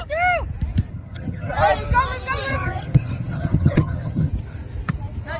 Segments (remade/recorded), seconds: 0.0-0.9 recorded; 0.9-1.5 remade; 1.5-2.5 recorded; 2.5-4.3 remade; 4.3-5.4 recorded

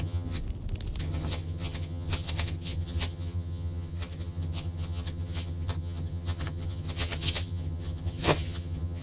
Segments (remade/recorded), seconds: 0.0-0.4 remade; 0.4-1.0 recorded; 1.0-9.0 remade

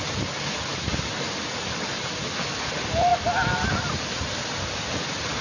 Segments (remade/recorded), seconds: 0.0-5.4 recorded

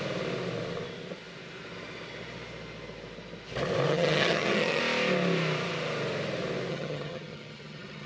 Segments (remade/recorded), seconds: 0.0-3.9 recorded; 3.9-4.8 remade; 4.8-6.7 recorded; 6.7-8.1 remade